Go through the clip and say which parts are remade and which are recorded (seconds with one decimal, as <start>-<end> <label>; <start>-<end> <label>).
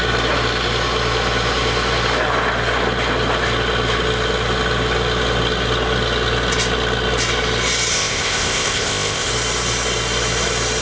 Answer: 0.0-7.9 recorded; 7.9-9.3 remade; 9.3-10.8 recorded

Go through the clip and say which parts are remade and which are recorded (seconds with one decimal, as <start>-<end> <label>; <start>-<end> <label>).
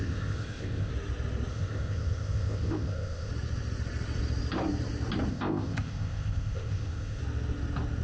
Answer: 0.0-0.9 remade; 0.9-1.5 recorded; 1.5-3.3 remade; 3.3-5.3 recorded; 5.3-7.2 remade; 7.2-8.0 recorded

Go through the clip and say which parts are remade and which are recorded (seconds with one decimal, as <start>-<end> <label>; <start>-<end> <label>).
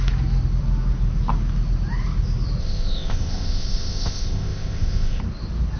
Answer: 0.0-2.6 recorded; 2.6-5.2 remade; 5.2-5.8 recorded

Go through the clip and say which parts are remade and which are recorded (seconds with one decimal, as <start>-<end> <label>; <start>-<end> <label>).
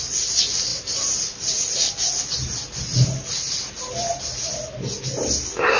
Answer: 0.0-5.8 recorded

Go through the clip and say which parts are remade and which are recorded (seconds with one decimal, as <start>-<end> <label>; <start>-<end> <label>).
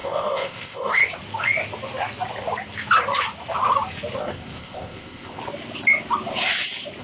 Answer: 0.0-1.0 remade; 1.0-4.2 recorded; 4.2-5.4 remade; 5.4-7.0 recorded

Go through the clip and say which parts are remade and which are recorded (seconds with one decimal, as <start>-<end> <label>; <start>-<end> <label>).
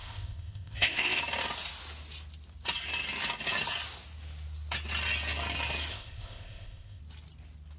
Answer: 0.0-1.2 remade; 1.2-5.9 recorded; 5.9-7.0 remade; 7.0-7.8 recorded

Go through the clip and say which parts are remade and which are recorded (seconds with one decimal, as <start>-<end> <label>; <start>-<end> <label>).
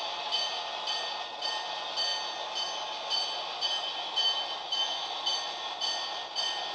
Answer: 0.0-6.7 recorded